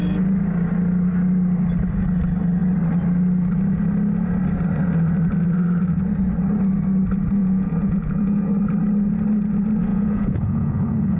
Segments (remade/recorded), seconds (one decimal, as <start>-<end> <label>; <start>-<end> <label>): 0.0-7.4 recorded; 7.4-8.5 remade; 8.5-9.9 recorded; 9.9-11.2 remade